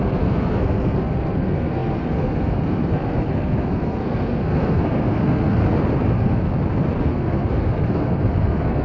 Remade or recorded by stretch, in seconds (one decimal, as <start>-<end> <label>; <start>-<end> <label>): 0.0-5.6 remade; 5.6-6.1 recorded; 6.1-6.5 remade; 6.5-7.0 recorded; 7.0-8.8 remade